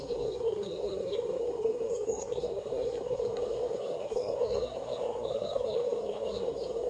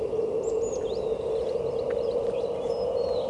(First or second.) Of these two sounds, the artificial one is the first